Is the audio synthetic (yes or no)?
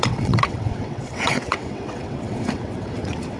yes